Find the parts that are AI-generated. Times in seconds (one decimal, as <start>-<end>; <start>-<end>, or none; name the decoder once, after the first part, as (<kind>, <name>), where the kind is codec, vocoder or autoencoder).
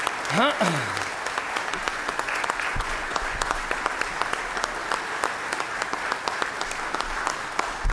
1.8-3.6 (vocoder, Vocos)